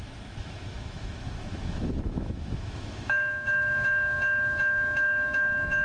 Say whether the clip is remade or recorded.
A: remade